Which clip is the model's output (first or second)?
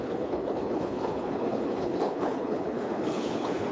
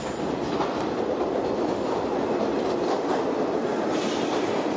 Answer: first